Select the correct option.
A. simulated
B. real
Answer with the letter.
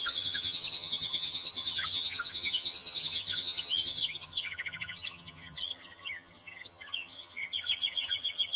A